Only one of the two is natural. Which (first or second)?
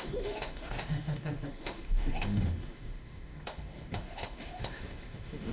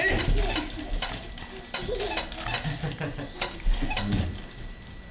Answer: second